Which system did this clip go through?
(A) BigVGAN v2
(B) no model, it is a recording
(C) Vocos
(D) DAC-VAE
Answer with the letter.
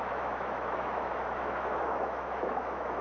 D